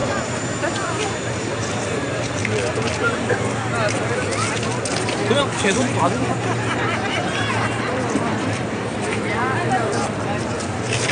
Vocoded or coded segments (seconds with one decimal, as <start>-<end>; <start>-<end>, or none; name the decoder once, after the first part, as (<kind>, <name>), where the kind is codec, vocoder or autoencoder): 0.0-2.4 (vocoder, BigVGAN v2); 5.4-11.1